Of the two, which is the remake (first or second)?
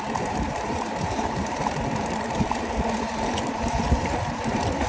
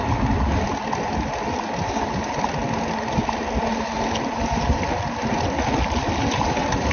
first